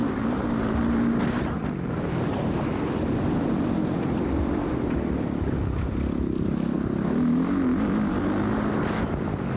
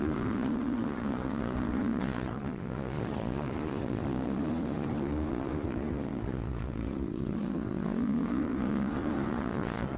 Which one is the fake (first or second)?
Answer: second